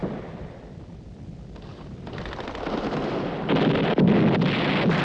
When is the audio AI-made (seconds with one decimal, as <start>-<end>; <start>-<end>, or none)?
1.7-3.1